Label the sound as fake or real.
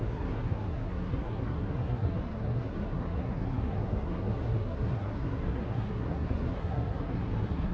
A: fake